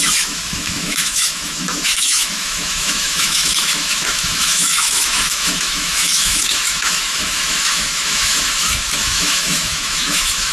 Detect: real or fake fake